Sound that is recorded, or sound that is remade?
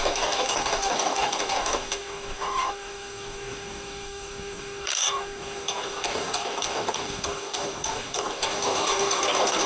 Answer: remade